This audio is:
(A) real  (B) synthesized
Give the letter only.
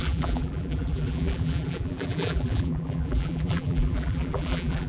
B